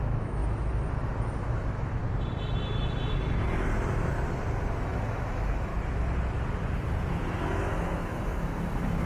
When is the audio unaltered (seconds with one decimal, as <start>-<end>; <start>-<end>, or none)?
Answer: 0.4-1.4; 2.0-4.8; 5.7-7.5